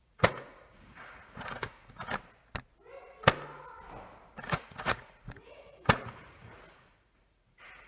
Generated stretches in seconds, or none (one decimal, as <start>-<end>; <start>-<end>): 0.0-2.1; 4.4-7.9